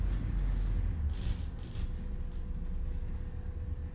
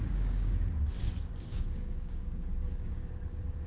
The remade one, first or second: second